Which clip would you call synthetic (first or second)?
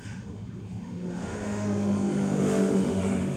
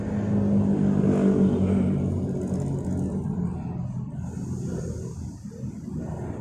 first